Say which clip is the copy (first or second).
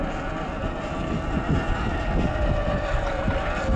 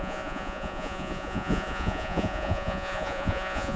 second